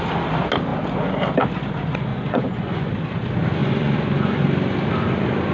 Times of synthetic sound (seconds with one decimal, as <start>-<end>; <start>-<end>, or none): 2.1-2.9; 3.6-4.4